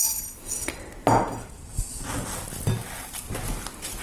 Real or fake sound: real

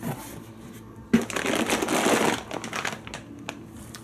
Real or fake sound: real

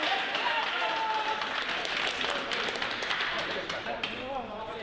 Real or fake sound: fake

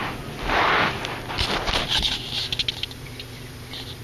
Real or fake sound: real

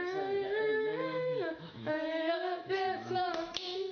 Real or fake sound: fake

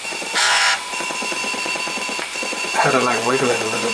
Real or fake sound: fake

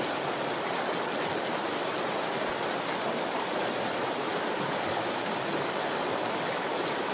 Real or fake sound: real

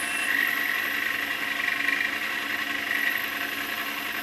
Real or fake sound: real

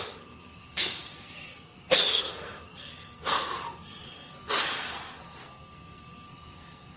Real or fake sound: fake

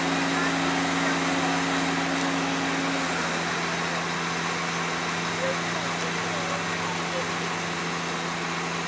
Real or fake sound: real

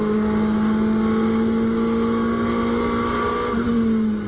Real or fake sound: real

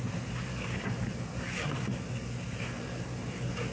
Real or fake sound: real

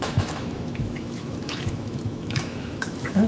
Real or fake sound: fake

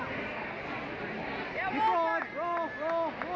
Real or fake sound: real